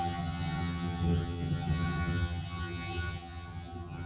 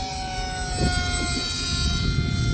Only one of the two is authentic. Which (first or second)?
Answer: second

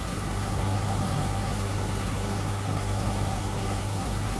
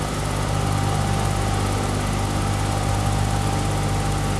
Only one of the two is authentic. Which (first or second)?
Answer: second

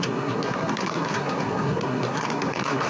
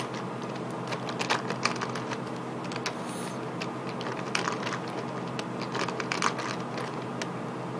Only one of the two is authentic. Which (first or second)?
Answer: second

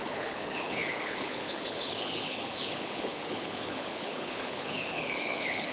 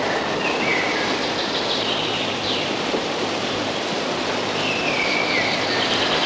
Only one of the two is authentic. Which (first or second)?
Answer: second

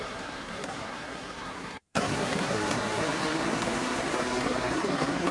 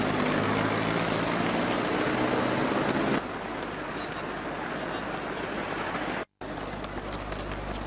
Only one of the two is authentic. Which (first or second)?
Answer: second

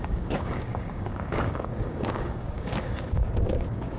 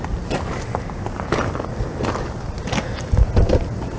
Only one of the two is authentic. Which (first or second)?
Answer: second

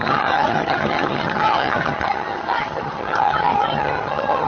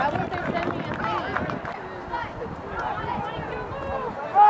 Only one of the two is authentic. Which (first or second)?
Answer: second